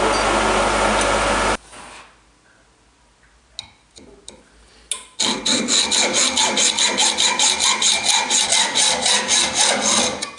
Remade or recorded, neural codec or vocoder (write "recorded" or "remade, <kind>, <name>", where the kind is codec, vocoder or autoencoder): recorded